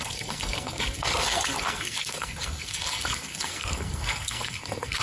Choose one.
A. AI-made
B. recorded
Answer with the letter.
A